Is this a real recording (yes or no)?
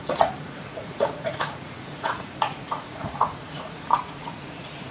no